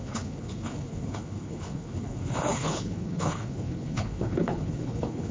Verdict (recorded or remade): remade